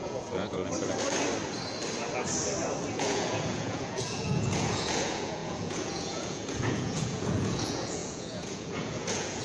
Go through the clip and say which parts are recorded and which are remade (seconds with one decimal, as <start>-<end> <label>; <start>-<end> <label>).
0.0-0.6 remade; 0.6-2.9 recorded; 2.9-9.4 remade